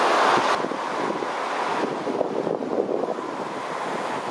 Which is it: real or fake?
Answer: real